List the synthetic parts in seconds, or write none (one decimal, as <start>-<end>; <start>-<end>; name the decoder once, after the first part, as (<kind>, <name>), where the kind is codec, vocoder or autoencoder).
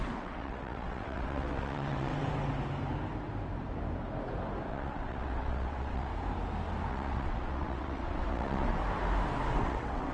0.0-2.1 (vocoder, WaveNeXt); 4.7-6.1; 6.9-8.8; 9.5-10.1